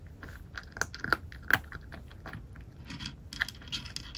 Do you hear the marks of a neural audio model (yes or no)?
no